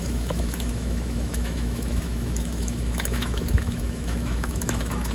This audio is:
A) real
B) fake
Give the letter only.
B